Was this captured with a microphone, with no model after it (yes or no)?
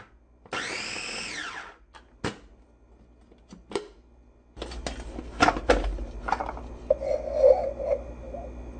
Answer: yes